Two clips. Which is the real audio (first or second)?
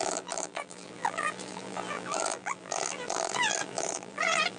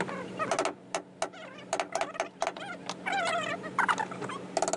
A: second